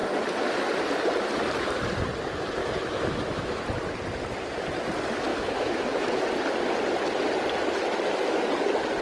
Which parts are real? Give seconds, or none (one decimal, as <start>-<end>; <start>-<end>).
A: 0.0-2.6; 3.6-5.3; 6.2-9.0